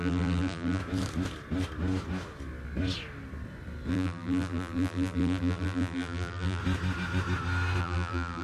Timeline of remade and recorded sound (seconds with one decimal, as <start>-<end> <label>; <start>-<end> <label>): 0.0-0.8 remade; 0.8-3.9 recorded; 3.9-6.6 remade; 6.6-7.8 recorded; 7.8-8.4 remade